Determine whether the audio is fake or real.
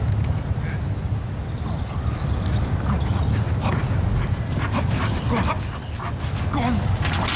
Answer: real